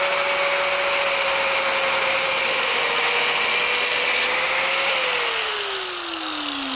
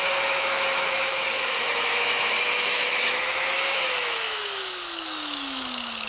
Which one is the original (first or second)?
first